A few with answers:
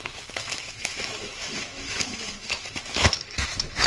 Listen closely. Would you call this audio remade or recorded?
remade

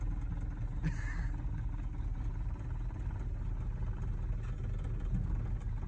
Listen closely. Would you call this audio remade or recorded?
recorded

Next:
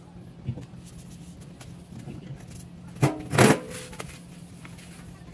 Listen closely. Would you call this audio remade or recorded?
recorded